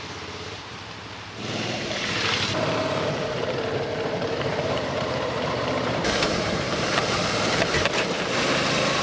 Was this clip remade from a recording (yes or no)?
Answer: yes